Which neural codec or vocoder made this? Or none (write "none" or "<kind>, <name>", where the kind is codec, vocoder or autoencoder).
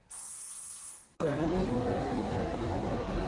codec, SNAC